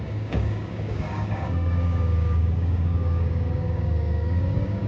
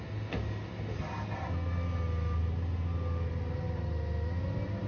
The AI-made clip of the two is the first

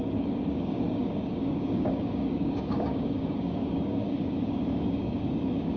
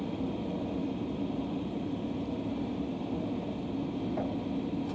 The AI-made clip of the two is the first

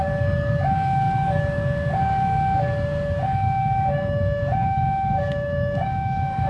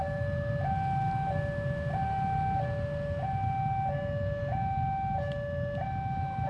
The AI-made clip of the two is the first